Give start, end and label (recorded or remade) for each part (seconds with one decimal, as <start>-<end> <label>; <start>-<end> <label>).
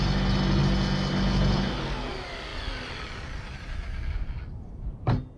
0.0-5.4 recorded